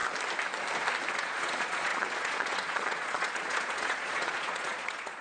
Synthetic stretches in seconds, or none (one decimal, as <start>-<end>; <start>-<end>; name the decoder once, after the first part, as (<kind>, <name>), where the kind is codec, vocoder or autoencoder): 1.1-5.2 (vocoder, Vocos)